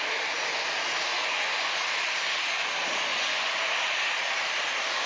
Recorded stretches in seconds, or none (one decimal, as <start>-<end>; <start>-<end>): 0.0-1.1; 1.8-3.1; 3.6-5.1